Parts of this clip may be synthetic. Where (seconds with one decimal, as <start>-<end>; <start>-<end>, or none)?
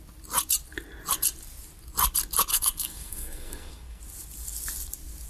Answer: 2.5-4.0